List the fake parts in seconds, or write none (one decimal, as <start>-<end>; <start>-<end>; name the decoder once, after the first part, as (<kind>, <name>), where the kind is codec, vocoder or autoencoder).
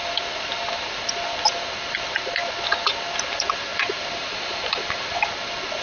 3.7-5.2 (vocoder, BigVGAN v2)